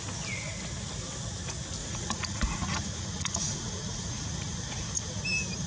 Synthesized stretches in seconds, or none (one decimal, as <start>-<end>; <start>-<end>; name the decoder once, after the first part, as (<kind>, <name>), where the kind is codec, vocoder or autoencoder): 1.8-5.2 (vocoder, Vocos)